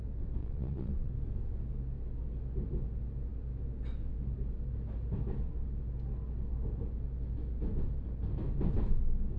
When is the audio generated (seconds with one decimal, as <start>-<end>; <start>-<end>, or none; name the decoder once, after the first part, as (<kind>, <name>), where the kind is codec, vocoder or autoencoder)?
0.4-1.1 (vocoder, Vocos)

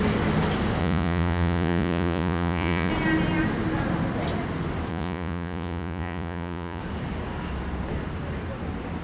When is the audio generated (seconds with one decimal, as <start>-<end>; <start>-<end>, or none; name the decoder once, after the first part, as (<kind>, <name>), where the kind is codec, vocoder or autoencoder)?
0.8-2.9 (vocoder, Vocos); 4.9-6.8